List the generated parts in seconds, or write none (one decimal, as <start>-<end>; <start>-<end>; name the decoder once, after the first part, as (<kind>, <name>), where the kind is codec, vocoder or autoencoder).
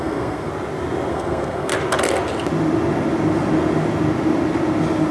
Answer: 0.0-0.5 (codec, SNAC); 1.1-1.7